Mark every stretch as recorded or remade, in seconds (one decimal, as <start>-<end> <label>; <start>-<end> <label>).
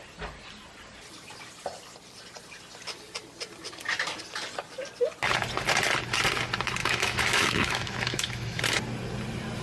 0.0-6.8 recorded; 6.8-8.6 remade; 8.6-9.6 recorded